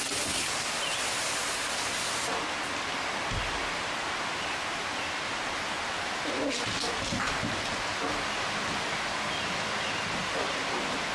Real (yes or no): yes